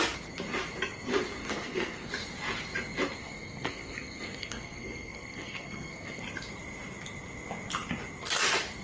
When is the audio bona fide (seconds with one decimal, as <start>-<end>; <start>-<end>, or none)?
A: 0.0-1.4; 2.1-3.2; 6.2-8.8